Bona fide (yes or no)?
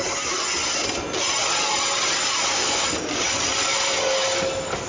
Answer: yes